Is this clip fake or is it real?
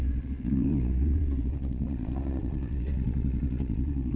fake